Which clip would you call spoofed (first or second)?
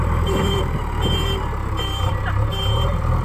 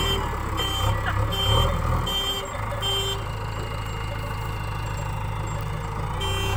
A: first